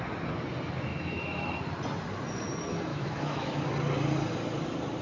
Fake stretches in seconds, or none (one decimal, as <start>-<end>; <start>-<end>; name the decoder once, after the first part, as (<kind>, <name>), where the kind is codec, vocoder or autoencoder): 0.9-1.6 (autoencoder, DAC-VAE); 2.9-3.6